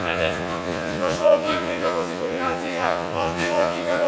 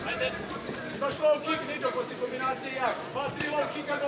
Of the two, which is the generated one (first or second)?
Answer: first